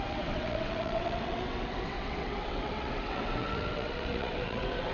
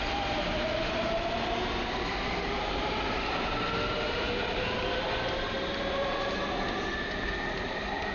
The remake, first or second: first